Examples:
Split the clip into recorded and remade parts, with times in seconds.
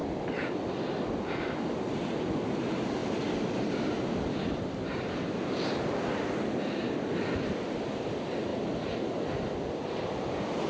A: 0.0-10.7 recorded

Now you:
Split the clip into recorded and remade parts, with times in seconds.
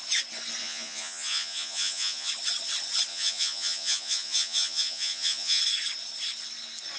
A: 0.0-0.6 recorded; 0.6-2.3 remade; 2.3-3.1 recorded; 3.1-5.6 remade; 5.6-7.0 recorded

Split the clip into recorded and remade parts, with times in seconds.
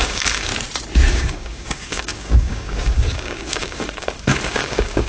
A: 0.0-0.5 remade; 0.5-1.1 recorded; 1.1-5.1 remade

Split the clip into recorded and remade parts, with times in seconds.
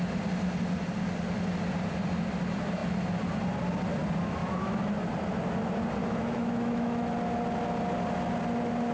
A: 0.0-4.4 recorded; 4.4-4.9 remade; 4.9-6.0 recorded; 6.0-7.1 remade; 7.1-8.9 recorded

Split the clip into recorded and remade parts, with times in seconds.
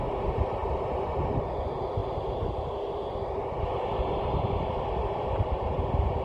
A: 0.0-6.2 recorded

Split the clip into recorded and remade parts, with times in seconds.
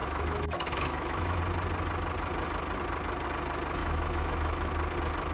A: 0.0-1.4 remade; 1.4-3.8 recorded; 3.8-4.7 remade; 4.7-5.3 recorded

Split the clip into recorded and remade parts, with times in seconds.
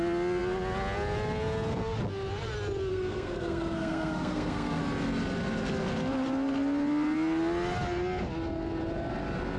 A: 0.0-2.9 recorded; 2.9-4.8 remade; 4.8-9.6 recorded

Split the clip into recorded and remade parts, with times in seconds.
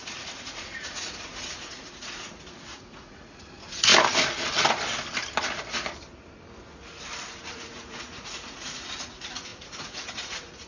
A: 0.0-3.9 remade; 3.9-7.5 recorded; 7.5-10.7 remade